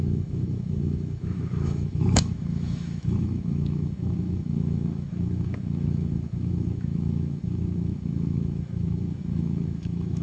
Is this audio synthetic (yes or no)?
yes